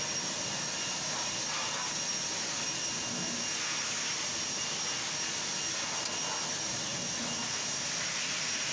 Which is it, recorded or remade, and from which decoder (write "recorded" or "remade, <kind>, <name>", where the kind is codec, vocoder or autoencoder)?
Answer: recorded